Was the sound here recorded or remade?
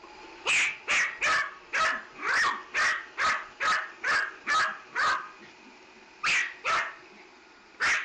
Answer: recorded